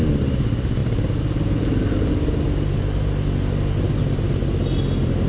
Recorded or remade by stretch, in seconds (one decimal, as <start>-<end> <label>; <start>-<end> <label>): 0.0-5.3 recorded